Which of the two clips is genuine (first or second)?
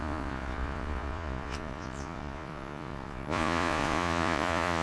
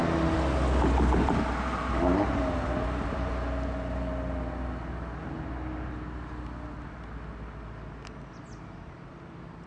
second